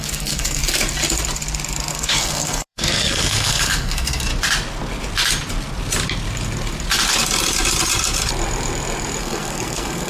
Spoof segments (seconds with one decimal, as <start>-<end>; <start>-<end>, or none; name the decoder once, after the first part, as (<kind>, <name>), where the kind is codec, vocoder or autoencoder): 0.0-0.6 (codec, SNAC); 1.9-4.3; 9.2-10.1

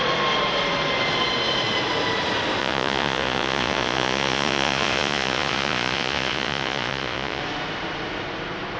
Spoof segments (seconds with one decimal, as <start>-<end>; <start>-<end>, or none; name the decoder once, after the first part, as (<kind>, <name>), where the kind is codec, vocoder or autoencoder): 2.6-7.4 (vocoder, Vocos)

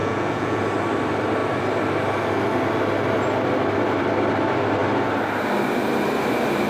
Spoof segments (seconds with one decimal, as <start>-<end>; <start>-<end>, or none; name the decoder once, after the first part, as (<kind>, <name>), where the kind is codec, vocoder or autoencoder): 0.0-0.6 (vocoder, Vocos)